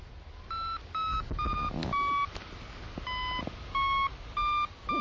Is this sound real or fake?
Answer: real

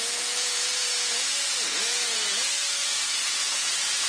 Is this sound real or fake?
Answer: fake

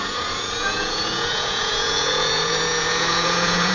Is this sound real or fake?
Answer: fake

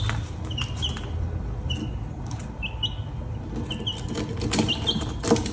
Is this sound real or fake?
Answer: real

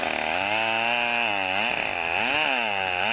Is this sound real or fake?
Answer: real